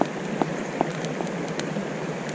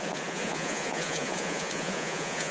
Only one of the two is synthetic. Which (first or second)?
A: second